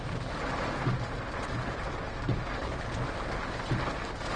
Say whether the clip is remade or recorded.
recorded